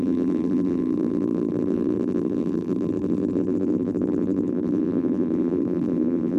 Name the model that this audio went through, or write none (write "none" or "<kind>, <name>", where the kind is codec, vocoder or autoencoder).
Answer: vocoder, BigVGAN v2